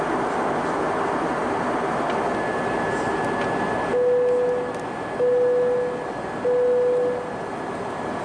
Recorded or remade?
recorded